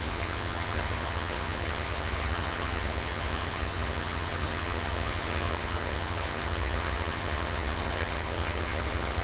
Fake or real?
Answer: fake